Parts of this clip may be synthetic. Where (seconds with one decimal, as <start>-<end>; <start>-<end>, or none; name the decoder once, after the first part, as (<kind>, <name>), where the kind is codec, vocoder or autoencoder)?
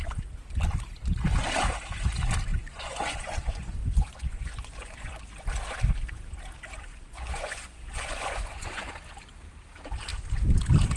2.5-5.2 (vocoder, Vocos); 6.9-8.9